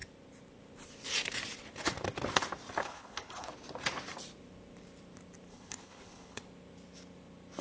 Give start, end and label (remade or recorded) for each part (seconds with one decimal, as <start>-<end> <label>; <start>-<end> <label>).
0.0-2.8 recorded; 2.8-3.5 remade; 3.5-5.5 recorded; 5.5-6.4 remade; 6.4-7.6 recorded

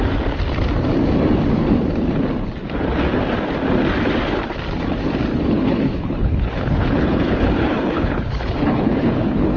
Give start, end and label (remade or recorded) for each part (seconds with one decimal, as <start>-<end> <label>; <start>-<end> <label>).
0.0-5.3 recorded; 5.3-9.6 remade

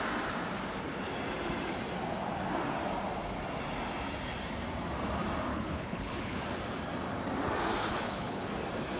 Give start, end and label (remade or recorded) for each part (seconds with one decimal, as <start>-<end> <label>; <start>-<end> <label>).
0.0-5.5 recorded; 5.5-6.4 remade; 6.4-7.8 recorded; 7.8-8.4 remade; 8.4-9.0 recorded

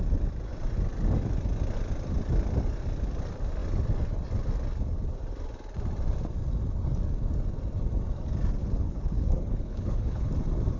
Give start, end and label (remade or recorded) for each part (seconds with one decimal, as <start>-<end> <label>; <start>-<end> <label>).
0.0-8.6 recorded; 8.6-10.3 remade; 10.3-10.8 recorded

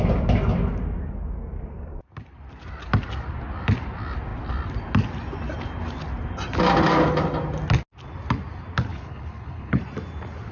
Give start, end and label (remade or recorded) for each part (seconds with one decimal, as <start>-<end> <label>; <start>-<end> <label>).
0.0-8.9 recorded; 8.9-9.8 remade; 9.8-10.5 recorded

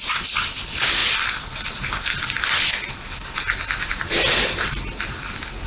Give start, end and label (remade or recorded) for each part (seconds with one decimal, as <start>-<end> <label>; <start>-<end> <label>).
0.0-5.7 recorded